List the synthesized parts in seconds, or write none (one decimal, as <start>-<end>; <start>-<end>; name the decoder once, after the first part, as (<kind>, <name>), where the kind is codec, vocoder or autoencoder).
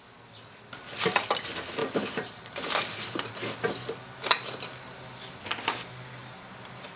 1.8-3.4 (vocoder, BigVGAN v2)